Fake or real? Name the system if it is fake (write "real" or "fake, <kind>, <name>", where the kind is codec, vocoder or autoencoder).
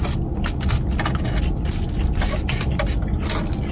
real